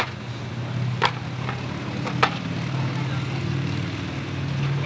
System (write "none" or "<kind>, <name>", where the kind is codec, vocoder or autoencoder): none